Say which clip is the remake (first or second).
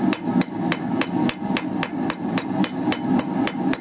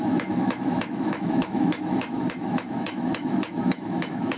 second